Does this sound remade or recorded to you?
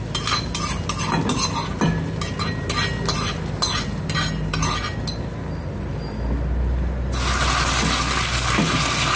recorded